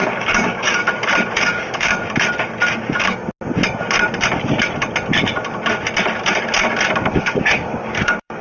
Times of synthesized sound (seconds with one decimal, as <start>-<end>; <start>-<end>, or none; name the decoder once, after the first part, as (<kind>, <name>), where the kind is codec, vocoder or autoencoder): 0.0-0.8 (codec, DAC); 1.4-1.9; 2.7-3.2; 7.1-8.4